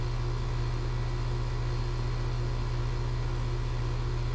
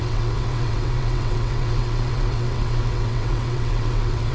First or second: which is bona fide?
first